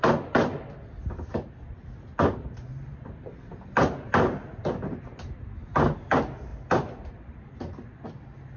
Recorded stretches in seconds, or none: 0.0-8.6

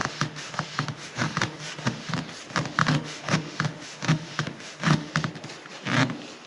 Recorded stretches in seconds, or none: 2.1-2.8; 5.1-6.5

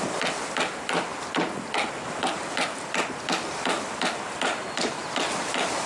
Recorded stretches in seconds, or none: 0.0-5.9

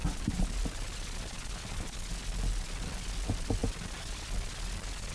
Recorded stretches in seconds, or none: 0.0-5.1

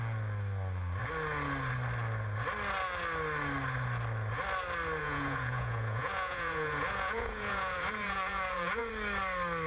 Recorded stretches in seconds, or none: 0.0-5.0; 8.9-9.7